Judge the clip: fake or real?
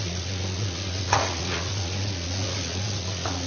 fake